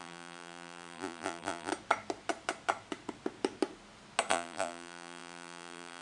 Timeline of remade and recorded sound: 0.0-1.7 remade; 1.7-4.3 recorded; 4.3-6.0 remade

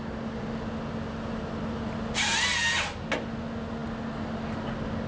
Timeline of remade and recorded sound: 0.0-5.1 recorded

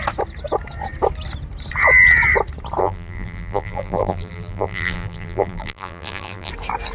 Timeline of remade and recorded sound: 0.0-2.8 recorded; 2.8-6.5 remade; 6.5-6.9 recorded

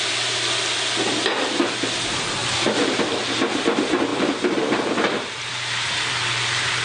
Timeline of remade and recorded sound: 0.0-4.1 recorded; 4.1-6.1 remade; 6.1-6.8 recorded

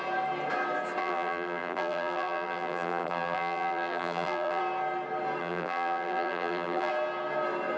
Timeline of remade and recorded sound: 0.0-1.0 recorded; 1.0-4.6 remade; 4.6-5.4 recorded; 5.4-6.9 remade; 6.9-7.8 recorded

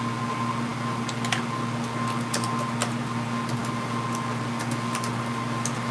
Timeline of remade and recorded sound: 0.0-5.9 recorded

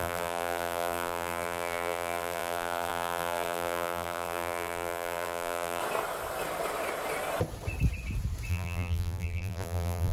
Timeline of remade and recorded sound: 0.0-5.8 remade; 5.8-8.5 recorded; 8.5-10.1 remade

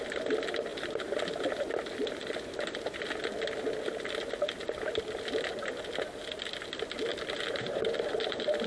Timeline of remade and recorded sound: 0.0-0.7 recorded; 0.7-3.1 remade; 3.1-7.1 recorded; 7.1-8.7 remade